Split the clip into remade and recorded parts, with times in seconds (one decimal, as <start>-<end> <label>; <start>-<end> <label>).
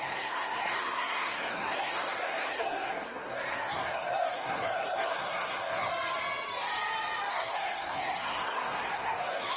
0.0-5.9 remade; 5.9-7.3 recorded; 7.3-9.6 remade